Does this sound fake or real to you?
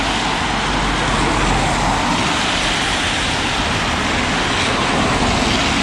real